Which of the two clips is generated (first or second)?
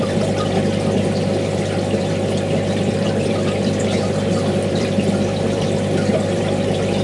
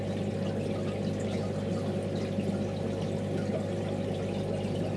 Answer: first